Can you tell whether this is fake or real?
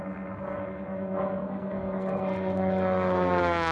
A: fake